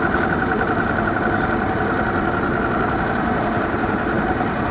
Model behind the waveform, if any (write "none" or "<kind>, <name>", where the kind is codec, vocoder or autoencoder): vocoder, BigVGAN v2